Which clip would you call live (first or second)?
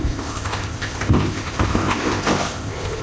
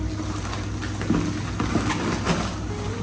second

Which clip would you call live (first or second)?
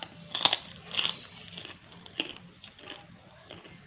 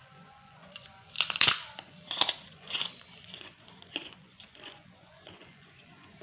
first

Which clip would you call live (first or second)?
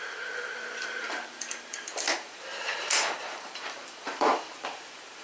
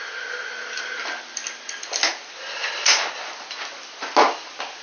second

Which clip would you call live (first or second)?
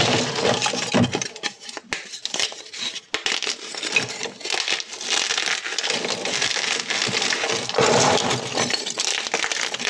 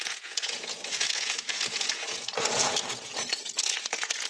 first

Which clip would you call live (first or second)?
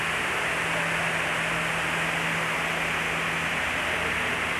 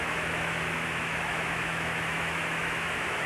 first